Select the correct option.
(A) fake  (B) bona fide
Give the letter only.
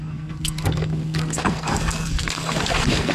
A